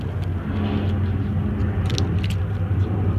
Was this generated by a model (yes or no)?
no